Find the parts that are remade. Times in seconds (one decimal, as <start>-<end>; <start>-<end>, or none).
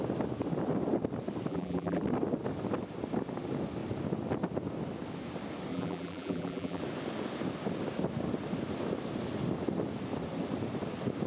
1.5-2.0; 5.7-6.8